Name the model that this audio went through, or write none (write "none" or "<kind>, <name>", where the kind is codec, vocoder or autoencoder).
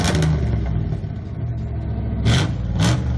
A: none